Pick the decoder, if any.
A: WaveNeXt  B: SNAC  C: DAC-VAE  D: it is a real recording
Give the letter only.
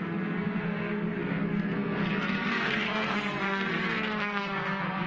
B